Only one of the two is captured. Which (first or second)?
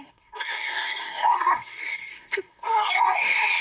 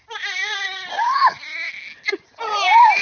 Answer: second